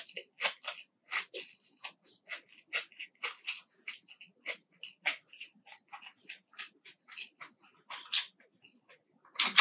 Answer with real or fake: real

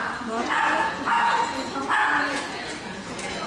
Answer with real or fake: fake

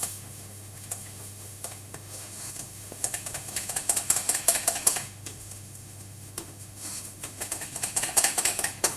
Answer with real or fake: fake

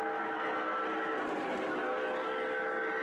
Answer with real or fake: real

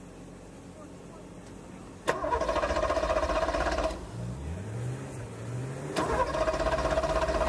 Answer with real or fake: real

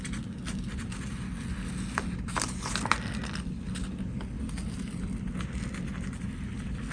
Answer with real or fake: real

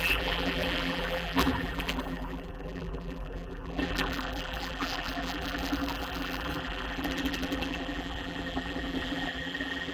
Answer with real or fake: fake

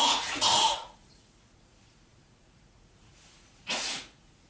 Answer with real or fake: fake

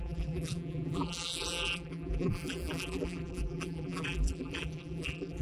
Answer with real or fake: fake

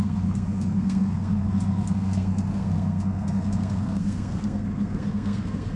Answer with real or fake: fake